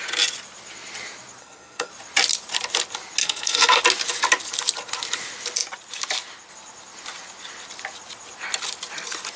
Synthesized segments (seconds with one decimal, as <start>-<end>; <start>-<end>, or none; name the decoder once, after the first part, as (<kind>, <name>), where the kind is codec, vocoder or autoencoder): 1.4-1.9 (codec, SNAC); 3.2-3.8